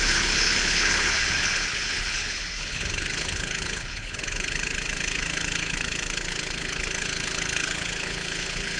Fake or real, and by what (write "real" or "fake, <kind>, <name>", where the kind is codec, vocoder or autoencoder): fake, codec, HILCodec